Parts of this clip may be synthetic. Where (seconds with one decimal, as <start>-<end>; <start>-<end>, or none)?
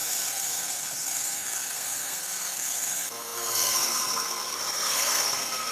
0.0-5.7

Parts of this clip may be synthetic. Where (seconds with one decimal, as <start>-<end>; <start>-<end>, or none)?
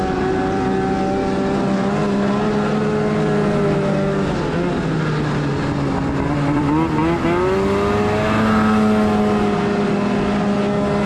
none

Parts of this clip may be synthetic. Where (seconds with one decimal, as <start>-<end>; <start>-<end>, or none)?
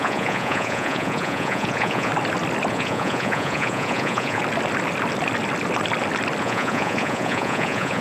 0.0-2.1; 2.7-4.4; 6.4-8.0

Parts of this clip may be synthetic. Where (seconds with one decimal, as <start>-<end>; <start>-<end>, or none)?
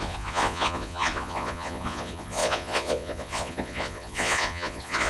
0.0-5.1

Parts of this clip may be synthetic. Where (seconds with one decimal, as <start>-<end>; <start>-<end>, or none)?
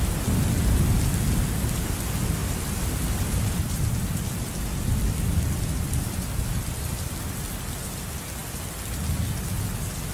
2.4-7.1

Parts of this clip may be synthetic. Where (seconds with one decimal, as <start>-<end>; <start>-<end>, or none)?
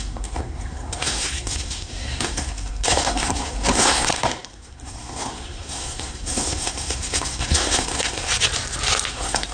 0.0-8.3; 9.1-9.5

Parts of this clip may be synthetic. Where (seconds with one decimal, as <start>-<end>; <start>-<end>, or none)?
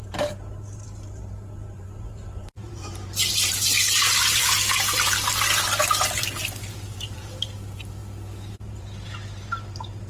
0.0-8.0; 8.5-10.1